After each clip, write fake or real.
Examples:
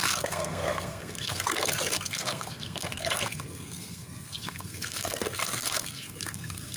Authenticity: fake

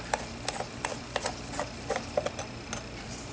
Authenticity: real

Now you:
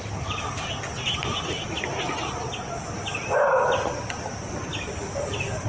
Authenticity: real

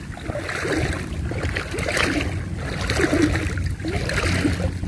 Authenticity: real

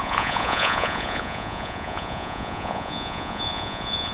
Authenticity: fake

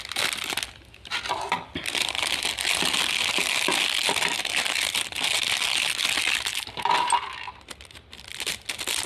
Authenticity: real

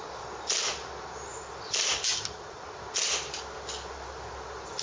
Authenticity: real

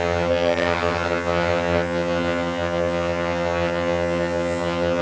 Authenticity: fake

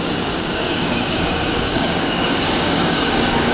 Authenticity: fake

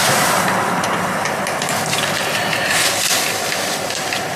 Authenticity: real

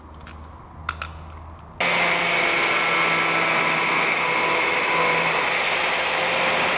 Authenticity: real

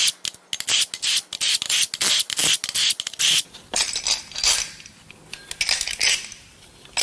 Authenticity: real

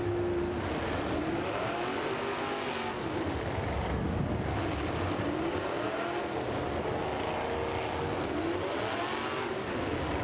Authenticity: real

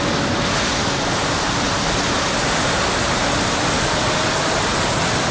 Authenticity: real